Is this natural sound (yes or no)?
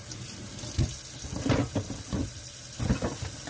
yes